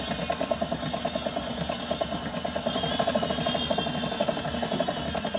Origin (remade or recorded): recorded